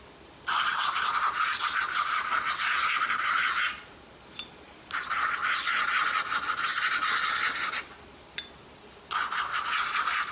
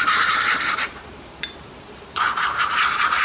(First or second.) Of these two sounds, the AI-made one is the second